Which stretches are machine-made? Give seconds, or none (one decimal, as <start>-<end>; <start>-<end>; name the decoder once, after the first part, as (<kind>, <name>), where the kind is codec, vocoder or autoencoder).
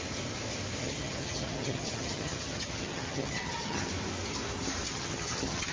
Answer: 0.8-3.9 (vocoder, HiFi-GAN); 4.9-5.7